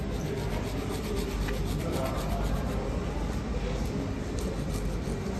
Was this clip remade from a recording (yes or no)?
no